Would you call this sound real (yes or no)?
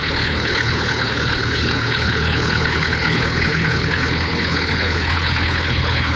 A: no